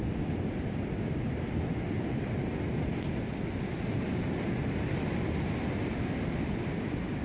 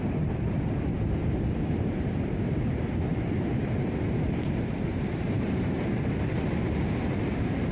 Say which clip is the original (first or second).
first